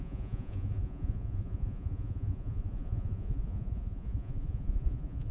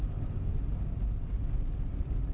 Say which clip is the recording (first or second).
second